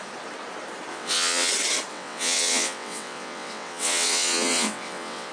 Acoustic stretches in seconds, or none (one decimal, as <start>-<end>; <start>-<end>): 0.0-0.9; 1.5-1.9